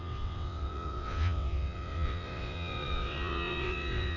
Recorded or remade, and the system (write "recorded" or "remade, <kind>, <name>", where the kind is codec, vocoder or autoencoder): remade, vocoder, WaveNeXt